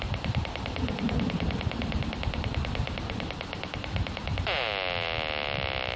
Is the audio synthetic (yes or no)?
no